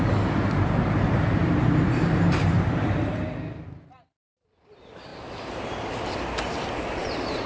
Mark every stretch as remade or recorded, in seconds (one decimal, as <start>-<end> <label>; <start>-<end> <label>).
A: 0.0-7.5 remade